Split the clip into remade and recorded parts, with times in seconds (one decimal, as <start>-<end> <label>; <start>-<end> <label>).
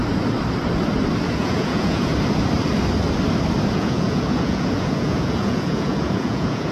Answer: 0.0-1.3 recorded; 1.3-2.1 remade; 2.1-3.7 recorded; 3.7-6.7 remade